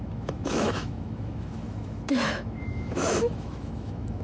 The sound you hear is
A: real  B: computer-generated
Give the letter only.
B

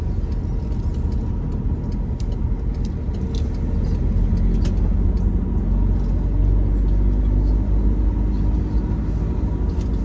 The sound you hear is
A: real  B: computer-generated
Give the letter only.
A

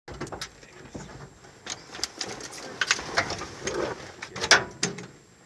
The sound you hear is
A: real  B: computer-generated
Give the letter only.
A